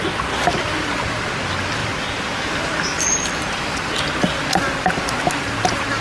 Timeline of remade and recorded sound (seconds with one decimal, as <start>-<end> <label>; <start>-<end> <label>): 0.0-1.8 recorded; 1.8-3.9 remade; 3.9-6.0 recorded